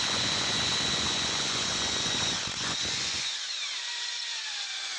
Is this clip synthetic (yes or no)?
yes